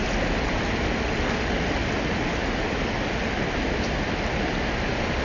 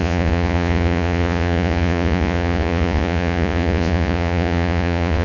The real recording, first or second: first